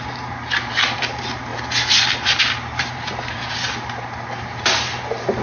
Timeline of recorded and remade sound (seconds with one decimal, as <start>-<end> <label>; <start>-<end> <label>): 0.0-1.5 remade; 1.5-2.4 recorded; 2.4-5.4 remade